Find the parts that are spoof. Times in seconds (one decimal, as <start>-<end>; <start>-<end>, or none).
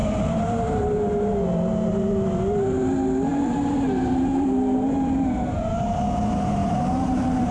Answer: 0.0-1.3; 3.3-6.0; 6.6-7.5